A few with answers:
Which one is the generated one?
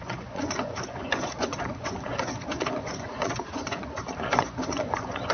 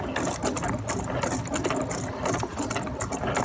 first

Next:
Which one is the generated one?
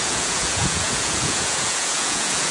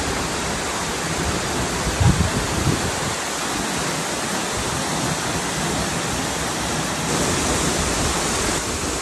first